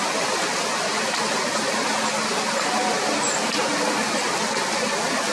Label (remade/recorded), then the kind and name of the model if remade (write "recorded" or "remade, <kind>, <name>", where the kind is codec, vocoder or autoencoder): recorded